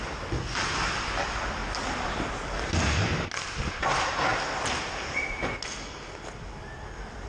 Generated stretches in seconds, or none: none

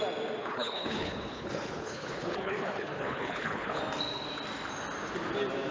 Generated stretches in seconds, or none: 0.4-3.8